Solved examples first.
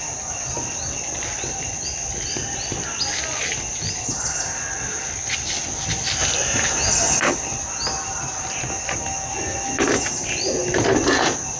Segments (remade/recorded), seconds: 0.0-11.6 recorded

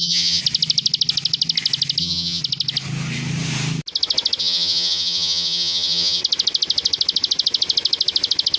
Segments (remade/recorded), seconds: 0.0-0.4 remade; 0.4-2.0 recorded; 2.0-2.4 remade; 2.4-4.4 recorded; 4.4-6.2 remade; 6.2-8.6 recorded

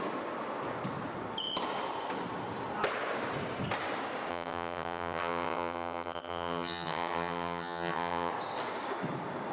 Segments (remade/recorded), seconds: 0.0-4.3 recorded; 4.3-8.3 remade; 8.3-9.5 recorded

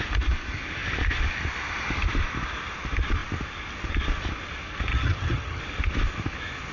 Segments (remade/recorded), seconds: 0.0-4.9 recorded; 4.9-5.6 remade; 5.6-6.7 recorded

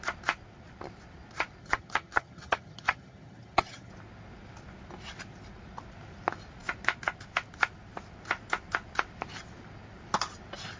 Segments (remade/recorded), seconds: 0.0-1.6 recorded; 1.6-3.9 remade; 3.9-10.8 recorded

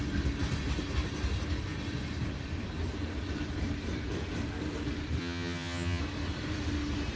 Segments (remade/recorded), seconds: 0.0-5.2 recorded; 5.2-6.0 remade; 6.0-7.2 recorded